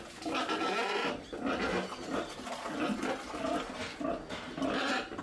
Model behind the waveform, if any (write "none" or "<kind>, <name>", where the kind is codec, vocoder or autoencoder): none